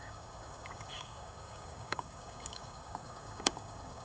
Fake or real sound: fake